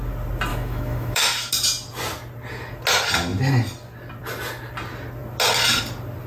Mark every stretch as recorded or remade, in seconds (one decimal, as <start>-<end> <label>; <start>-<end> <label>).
0.0-0.5 recorded; 0.5-1.5 remade; 1.5-6.3 recorded